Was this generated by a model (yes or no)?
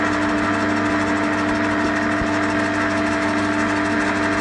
no